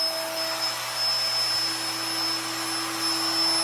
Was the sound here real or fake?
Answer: real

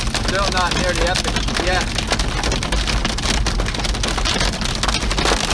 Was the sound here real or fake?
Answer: real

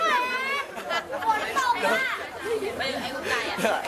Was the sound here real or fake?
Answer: fake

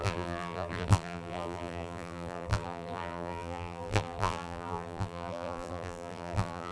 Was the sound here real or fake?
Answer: fake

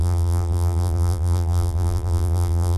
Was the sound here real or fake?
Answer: fake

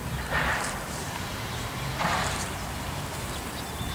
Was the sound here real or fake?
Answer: fake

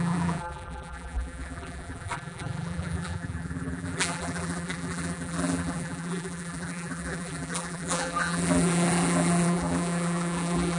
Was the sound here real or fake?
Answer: fake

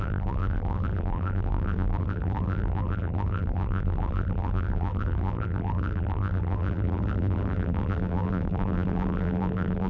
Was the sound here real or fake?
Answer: fake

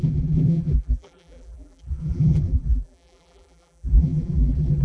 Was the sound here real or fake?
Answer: fake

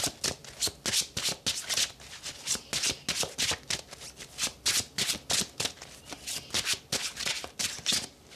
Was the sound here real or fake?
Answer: real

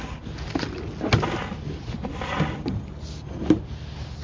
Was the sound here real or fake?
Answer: real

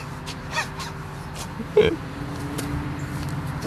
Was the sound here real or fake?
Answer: fake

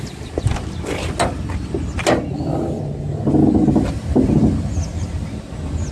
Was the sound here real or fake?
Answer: real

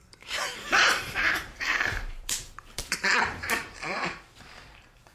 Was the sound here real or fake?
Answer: fake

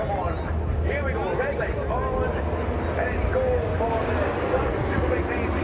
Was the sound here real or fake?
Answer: real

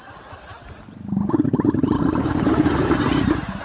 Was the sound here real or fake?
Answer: fake